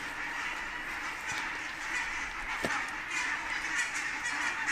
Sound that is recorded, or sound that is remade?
recorded